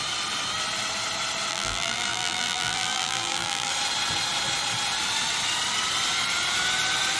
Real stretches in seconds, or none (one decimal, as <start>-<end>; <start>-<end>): 0.0-1.5; 3.7-7.2